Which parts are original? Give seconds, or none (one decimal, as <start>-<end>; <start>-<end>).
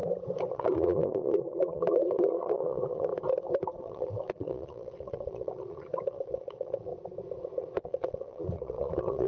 0.0-0.5; 3.1-3.8; 6.9-7.6